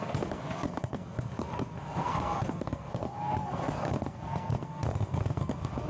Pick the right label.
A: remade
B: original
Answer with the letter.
A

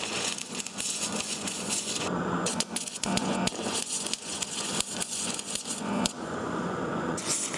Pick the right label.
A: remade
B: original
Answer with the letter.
A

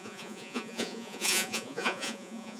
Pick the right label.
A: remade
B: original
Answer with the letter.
A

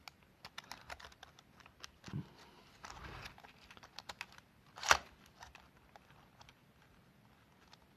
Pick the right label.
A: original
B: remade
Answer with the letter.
A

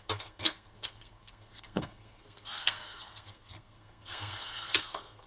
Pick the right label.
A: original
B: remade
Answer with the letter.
B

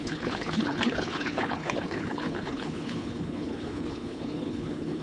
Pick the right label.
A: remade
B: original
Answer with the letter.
A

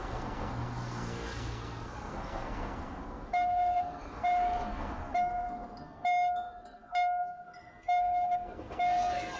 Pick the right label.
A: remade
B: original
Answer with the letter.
A